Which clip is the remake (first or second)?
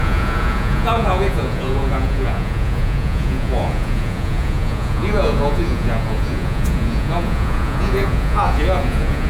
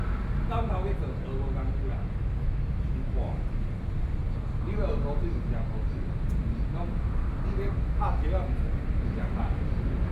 first